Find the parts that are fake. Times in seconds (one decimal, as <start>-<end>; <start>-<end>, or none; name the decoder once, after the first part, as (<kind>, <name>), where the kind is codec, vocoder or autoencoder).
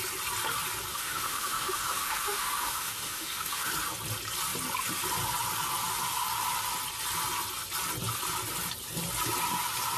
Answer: 0.9-3.7 (autoencoder, DAC-VAE)